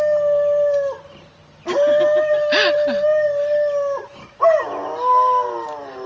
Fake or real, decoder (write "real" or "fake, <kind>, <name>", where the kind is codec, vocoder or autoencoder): real